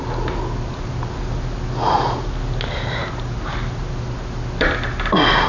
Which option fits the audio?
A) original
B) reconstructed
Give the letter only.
A